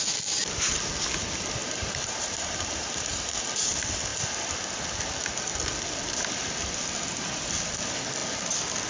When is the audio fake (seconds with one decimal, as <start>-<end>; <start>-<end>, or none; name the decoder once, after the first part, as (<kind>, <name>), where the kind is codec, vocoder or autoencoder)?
1.6-3.4 (vocoder, BigVGAN v2)